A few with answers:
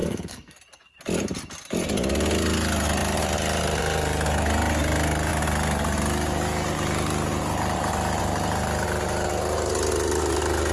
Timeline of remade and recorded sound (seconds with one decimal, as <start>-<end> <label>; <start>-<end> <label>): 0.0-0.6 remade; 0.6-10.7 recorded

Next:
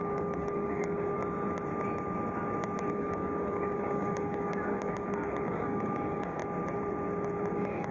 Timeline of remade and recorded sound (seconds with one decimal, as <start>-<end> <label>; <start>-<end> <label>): 0.0-1.2 remade; 1.2-2.9 recorded; 2.9-6.4 remade; 6.4-7.5 recorded; 7.5-7.9 remade

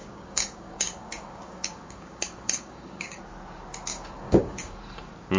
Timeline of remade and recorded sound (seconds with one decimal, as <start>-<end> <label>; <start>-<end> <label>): 0.0-3.2 remade; 3.2-3.9 recorded; 3.9-4.8 remade; 4.8-5.4 recorded

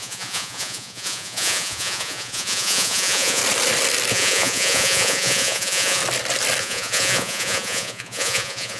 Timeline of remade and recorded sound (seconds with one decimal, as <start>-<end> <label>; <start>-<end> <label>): 0.0-3.4 remade; 3.4-4.1 recorded; 4.1-6.0 remade; 6.0-6.6 recorded; 6.6-8.8 remade